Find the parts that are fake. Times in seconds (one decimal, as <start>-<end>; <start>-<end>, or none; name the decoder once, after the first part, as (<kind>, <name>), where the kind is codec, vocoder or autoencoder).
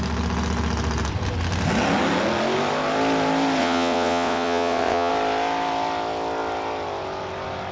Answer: 3.6-5.1 (vocoder, WaveNeXt)